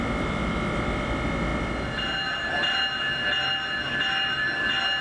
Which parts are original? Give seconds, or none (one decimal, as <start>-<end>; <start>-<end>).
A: 0.0-5.0